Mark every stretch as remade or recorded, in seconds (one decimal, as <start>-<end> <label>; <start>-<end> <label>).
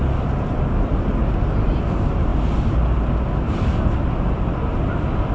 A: 0.0-5.3 recorded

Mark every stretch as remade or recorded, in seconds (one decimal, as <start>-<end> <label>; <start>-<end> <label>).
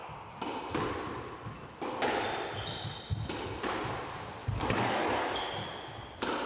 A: 0.0-4.4 recorded; 4.4-5.4 remade; 5.4-6.5 recorded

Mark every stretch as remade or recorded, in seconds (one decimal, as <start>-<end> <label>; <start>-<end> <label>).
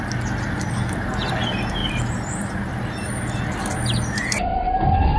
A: 0.0-1.8 recorded; 1.8-2.7 remade; 2.7-5.2 recorded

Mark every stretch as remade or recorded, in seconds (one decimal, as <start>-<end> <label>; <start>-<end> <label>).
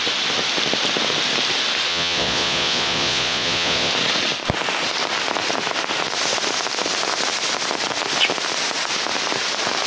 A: 0.0-1.9 recorded; 1.9-3.9 remade; 3.9-9.9 recorded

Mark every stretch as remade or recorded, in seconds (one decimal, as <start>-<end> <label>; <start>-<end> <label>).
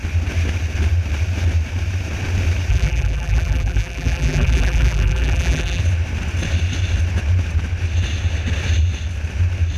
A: 0.0-2.7 recorded; 2.7-5.8 remade; 5.8-9.8 recorded